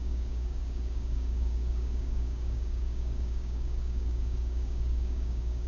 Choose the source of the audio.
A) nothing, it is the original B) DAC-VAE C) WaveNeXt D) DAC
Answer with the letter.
D